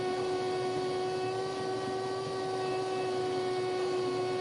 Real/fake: real